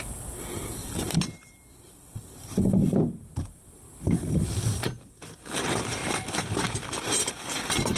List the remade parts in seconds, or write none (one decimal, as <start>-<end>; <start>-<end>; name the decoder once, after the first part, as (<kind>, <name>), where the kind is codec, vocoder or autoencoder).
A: none